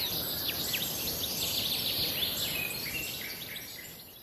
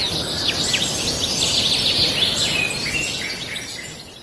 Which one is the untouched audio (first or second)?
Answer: second